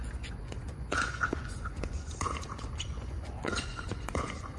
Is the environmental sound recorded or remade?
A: remade